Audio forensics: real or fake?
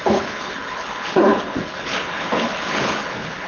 fake